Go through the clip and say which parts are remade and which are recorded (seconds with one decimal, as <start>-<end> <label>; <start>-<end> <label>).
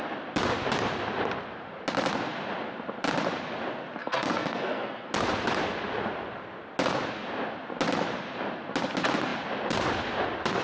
0.0-4.0 recorded; 4.0-5.1 remade; 5.1-10.6 recorded